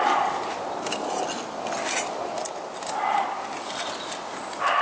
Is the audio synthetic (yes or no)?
no